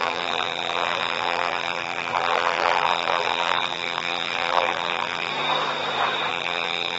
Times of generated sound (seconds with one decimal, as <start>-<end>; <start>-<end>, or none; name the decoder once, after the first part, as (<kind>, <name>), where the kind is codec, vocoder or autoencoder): 0.0-5.3 (vocoder, BigVGAN v2); 6.3-7.0